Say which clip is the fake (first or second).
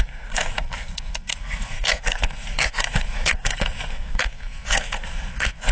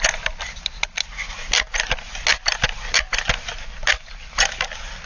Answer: first